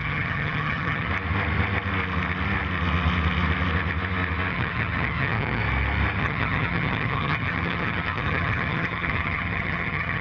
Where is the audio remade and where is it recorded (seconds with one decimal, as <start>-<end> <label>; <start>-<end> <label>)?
0.0-1.1 remade; 1.1-4.5 recorded; 4.5-5.6 remade; 5.6-6.2 recorded; 6.2-10.2 remade